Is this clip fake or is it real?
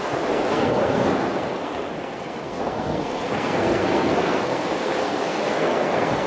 fake